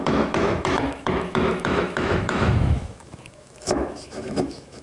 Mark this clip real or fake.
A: fake